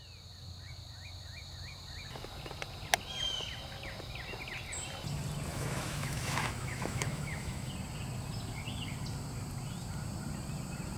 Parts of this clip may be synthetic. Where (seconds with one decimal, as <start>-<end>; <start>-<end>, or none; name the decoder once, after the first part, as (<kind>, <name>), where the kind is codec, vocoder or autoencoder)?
5.5-7.7 (autoencoder, DAC-VAE)